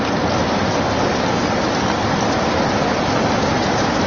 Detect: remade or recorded recorded